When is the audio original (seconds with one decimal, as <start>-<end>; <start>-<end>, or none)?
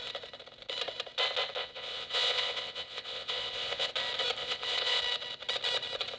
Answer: 0.0-1.6; 3.9-4.4; 5.0-6.2